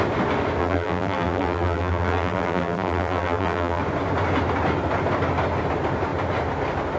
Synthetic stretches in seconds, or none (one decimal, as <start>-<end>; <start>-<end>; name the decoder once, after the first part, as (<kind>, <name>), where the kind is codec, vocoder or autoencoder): 0.6-3.8 (vocoder, BigVGAN v2)